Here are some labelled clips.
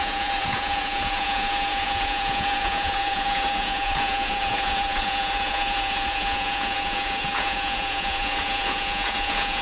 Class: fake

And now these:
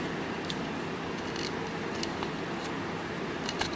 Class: real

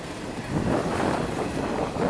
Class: real